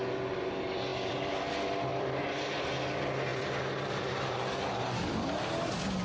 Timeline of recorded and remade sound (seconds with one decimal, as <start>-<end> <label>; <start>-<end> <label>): 0.0-0.9 recorded; 0.9-1.5 remade; 1.5-1.9 recorded; 1.9-2.7 remade; 2.7-3.3 recorded; 3.3-4.0 remade; 4.0-6.0 recorded